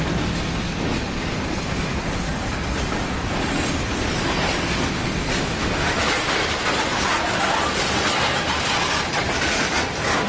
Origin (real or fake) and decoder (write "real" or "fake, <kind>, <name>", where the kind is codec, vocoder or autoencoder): real